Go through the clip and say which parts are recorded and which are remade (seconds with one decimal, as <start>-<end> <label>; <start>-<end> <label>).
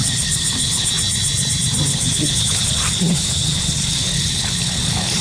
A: 0.0-0.9 remade; 0.9-1.9 recorded; 1.9-5.2 remade